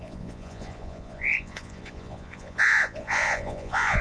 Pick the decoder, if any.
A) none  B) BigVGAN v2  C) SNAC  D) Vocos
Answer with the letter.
D